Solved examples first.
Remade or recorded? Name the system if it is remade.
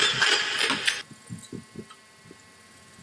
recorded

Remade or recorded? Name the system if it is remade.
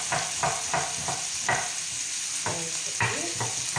recorded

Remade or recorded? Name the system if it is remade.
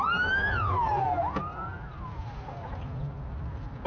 recorded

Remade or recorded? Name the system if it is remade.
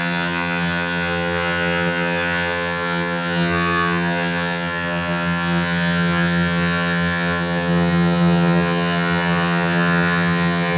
remade, vocoder, HiFi-GAN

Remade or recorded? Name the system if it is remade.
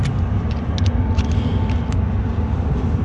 recorded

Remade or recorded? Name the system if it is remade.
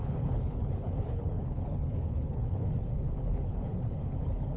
remade, codec, HILCodec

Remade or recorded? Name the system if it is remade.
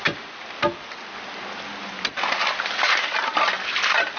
recorded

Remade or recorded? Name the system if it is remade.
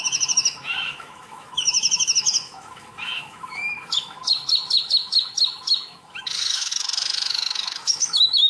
remade, autoencoder, DAC-VAE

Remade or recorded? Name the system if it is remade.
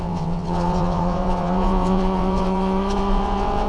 remade, vocoder, WaveNeXt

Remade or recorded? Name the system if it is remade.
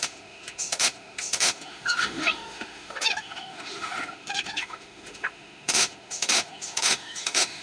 remade, autoencoder, DAC-VAE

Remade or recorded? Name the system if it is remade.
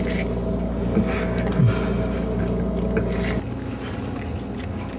recorded